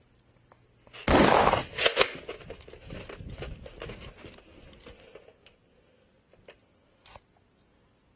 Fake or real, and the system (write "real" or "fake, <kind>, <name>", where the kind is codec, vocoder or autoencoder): real